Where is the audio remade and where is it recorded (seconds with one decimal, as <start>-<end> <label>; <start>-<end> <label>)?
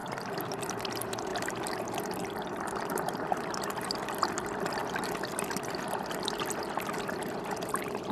0.0-8.1 recorded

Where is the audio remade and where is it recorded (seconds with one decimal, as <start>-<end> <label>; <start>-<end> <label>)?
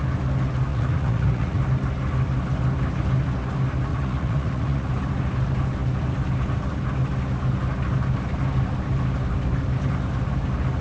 0.0-0.7 recorded; 0.7-1.6 remade; 1.6-3.9 recorded; 3.9-4.9 remade; 4.9-10.8 recorded